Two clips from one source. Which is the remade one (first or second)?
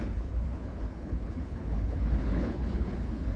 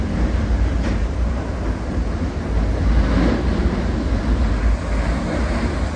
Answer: first